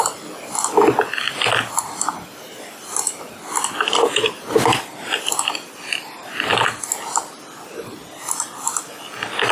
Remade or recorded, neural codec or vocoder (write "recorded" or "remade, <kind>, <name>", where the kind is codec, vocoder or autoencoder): recorded